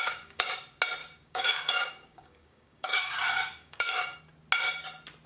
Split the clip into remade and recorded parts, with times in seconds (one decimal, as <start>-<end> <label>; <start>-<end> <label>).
0.0-0.5 remade; 0.5-1.0 recorded; 1.0-4.2 remade; 4.2-5.3 recorded